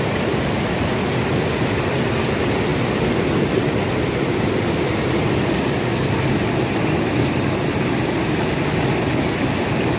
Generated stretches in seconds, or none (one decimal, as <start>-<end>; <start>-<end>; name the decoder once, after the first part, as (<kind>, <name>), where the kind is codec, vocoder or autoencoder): none